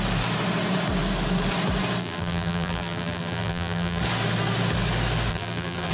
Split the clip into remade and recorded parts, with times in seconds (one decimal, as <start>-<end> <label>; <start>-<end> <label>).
0.0-2.0 recorded; 2.0-4.0 remade; 4.0-5.3 recorded; 5.3-5.9 remade